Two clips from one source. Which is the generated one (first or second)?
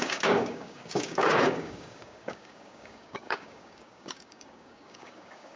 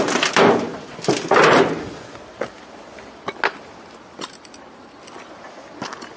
first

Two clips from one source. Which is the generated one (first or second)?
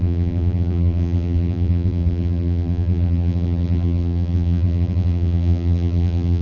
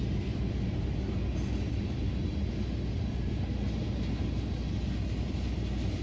first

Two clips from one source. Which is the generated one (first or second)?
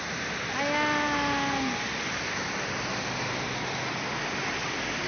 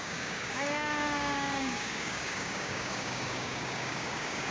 second